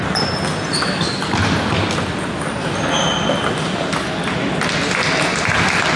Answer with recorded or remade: recorded